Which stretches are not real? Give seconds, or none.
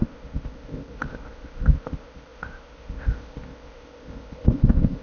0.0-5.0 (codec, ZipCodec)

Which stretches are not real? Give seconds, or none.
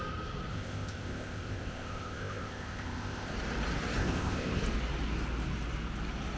0.5-3.3 (codec, ZipCodec); 4.0-4.6